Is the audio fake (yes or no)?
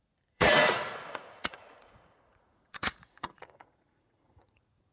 yes